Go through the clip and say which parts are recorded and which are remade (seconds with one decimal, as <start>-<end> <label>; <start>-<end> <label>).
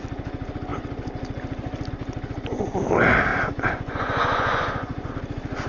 0.0-3.3 recorded; 3.3-5.1 remade; 5.1-5.7 recorded